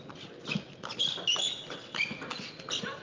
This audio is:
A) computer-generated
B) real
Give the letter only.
B